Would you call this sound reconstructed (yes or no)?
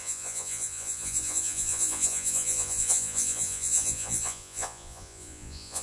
yes